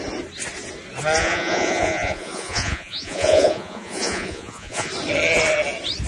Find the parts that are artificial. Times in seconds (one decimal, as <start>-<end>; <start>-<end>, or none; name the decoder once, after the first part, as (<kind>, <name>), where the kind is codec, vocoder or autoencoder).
1.2-4.9 (vocoder, Vocos)